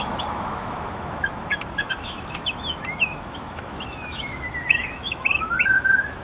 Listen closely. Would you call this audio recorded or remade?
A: remade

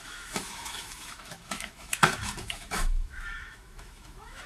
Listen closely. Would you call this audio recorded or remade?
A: remade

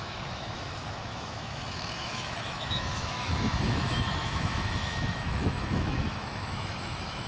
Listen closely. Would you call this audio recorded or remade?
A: remade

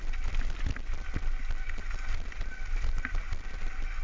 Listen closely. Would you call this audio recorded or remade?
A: recorded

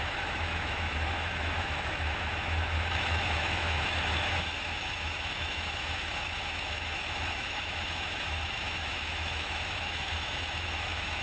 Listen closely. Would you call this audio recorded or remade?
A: remade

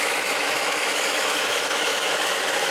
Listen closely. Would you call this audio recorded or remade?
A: remade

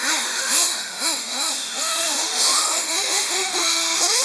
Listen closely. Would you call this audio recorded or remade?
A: remade